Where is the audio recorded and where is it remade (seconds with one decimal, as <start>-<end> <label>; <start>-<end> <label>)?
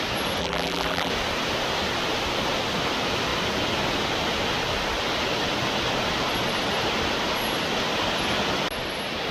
0.0-0.4 recorded; 0.4-1.1 remade; 1.1-9.3 recorded